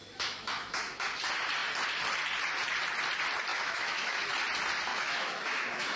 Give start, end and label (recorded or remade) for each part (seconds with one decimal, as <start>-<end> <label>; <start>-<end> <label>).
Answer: 0.0-1.2 remade; 1.2-3.5 recorded; 3.5-4.3 remade; 4.3-4.9 recorded; 4.9-6.0 remade